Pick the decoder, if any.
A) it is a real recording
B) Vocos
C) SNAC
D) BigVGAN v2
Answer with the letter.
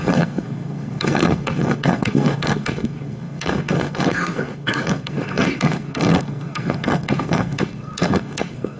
C